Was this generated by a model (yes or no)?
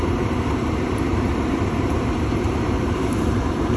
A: yes